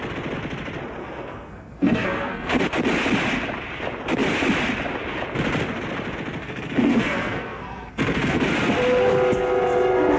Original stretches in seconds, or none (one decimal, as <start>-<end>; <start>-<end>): 0.0-1.0; 2.6-6.4; 8.4-10.2